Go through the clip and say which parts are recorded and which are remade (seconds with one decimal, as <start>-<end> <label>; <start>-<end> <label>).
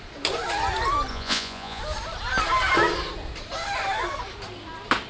0.0-1.1 recorded; 1.1-1.8 remade; 1.8-5.1 recorded